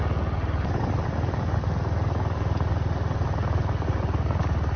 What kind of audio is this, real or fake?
real